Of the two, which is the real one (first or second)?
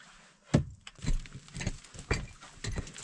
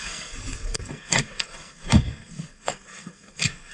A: first